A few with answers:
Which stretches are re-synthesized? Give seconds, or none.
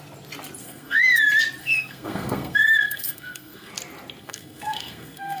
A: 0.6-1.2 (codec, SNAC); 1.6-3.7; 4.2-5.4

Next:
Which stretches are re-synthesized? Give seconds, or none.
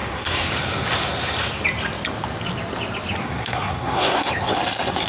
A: 0.0-0.5 (codec, SNAC); 3.2-4.3